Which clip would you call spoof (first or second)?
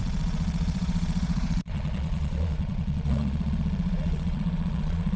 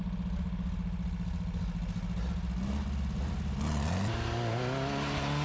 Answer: first